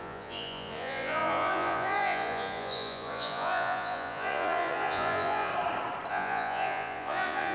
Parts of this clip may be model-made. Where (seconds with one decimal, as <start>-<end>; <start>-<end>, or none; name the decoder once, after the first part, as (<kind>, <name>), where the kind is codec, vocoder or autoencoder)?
0.0-5.5 (vocoder, Vocos); 6.1-7.5